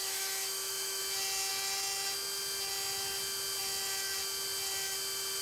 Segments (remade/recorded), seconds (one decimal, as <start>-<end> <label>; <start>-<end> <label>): 0.0-1.0 remade; 1.0-5.4 recorded